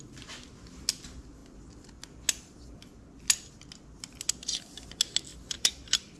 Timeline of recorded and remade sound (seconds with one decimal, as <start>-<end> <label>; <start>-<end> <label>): 0.0-5.3 recorded; 5.3-6.2 remade